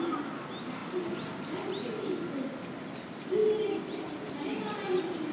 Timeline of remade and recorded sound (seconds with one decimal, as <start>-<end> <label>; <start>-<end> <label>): 0.0-5.3 recorded